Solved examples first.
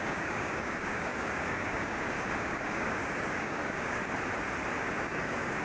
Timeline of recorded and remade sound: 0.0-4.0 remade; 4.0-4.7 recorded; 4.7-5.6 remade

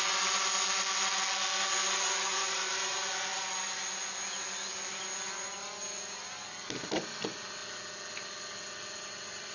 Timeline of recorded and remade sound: 0.0-2.3 recorded; 2.3-3.1 remade; 3.1-9.5 recorded

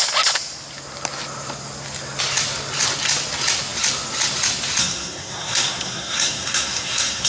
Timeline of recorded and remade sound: 0.0-4.8 recorded; 4.8-7.3 remade

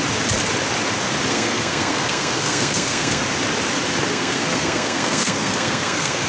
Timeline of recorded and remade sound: 0.0-1.3 recorded; 1.3-3.2 remade; 3.2-4.1 recorded; 4.1-6.3 remade